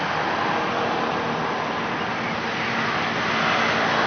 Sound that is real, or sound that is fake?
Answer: real